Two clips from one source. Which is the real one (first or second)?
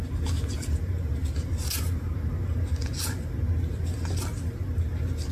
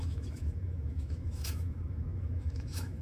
first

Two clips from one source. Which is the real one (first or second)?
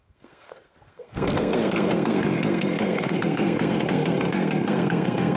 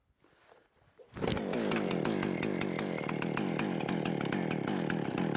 second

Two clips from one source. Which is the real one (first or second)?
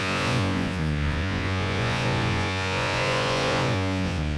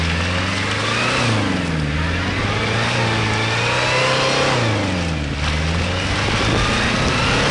second